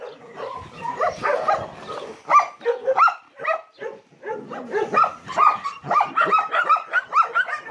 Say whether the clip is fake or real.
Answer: real